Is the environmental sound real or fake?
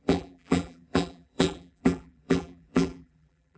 fake